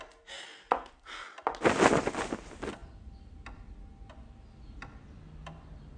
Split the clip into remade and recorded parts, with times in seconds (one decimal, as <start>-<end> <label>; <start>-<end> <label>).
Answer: 0.0-6.0 recorded